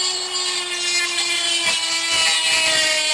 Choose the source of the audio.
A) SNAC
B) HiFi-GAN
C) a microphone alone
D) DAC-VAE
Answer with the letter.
C